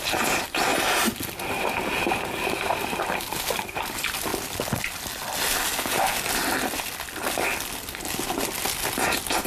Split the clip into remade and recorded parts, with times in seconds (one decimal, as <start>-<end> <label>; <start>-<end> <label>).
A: 0.0-0.7 remade; 0.7-1.5 recorded; 1.5-4.3 remade; 4.3-9.5 recorded